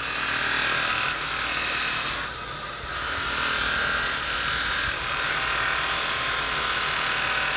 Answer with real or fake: real